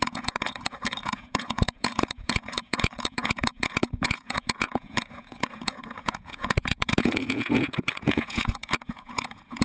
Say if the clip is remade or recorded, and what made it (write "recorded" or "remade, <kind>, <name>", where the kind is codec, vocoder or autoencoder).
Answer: remade, vocoder, Vocos